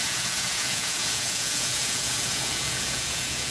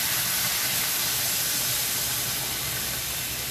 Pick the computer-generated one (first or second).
first